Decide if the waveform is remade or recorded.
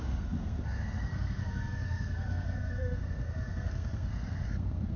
remade